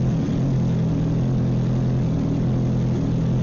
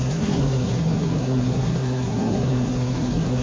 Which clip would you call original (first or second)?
first